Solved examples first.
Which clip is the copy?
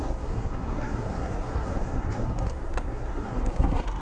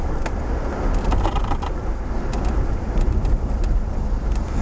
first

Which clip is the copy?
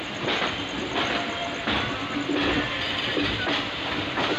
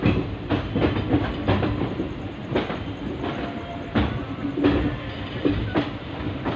second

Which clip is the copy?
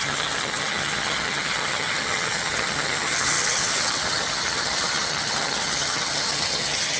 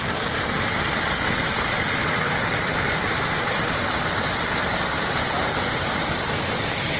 first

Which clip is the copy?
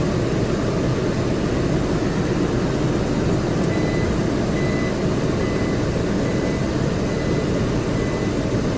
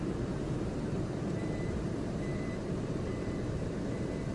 second